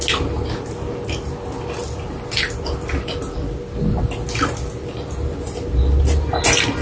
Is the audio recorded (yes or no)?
yes